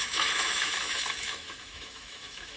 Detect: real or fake fake